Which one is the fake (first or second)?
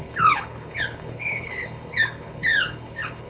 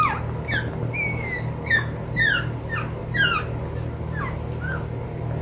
first